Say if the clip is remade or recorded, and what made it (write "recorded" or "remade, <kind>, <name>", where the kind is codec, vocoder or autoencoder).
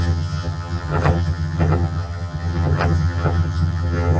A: remade, vocoder, HiFi-GAN